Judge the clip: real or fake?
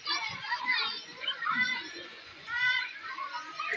fake